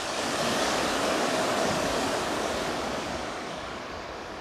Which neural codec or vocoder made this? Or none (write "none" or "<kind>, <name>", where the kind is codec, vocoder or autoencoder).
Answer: codec, DAC